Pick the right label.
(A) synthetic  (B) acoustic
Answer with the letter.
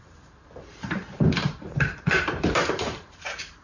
A